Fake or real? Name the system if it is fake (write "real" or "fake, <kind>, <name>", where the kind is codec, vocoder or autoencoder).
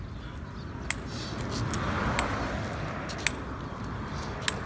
real